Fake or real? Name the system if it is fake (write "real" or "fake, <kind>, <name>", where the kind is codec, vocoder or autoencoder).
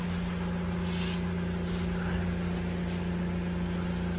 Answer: real